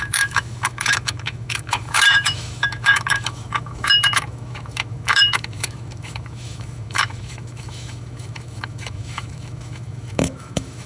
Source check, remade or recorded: remade